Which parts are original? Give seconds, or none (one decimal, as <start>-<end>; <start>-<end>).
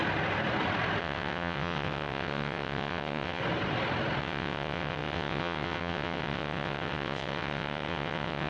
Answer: 0.0-1.0; 3.4-4.2